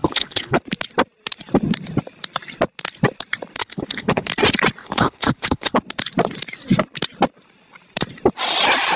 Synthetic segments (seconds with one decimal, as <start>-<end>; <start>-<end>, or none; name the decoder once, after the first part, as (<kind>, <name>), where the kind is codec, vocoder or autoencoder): 0.0-0.6 (codec, HILCodec); 3.6-4.3; 4.8-5.8